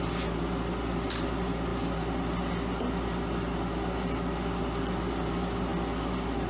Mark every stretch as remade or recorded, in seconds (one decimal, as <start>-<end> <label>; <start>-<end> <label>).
0.0-6.5 recorded